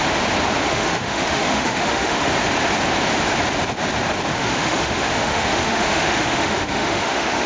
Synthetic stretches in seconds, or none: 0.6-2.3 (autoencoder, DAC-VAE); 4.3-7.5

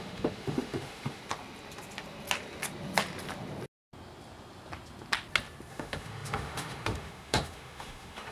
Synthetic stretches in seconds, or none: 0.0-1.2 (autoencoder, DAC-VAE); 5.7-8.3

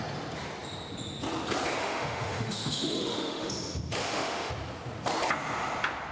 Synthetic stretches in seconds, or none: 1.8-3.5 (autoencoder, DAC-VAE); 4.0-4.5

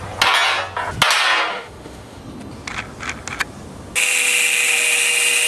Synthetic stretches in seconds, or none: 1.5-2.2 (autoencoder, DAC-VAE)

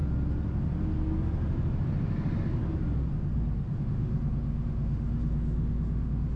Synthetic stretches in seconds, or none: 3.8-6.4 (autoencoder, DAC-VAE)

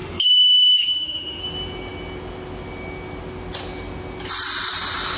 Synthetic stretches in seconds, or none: 0.0-1.4 (autoencoder, DAC-VAE)

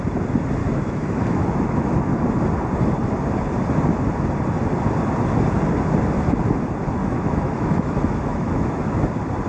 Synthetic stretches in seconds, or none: 0.6-2.1 (autoencoder, DAC-VAE); 7.0-9.0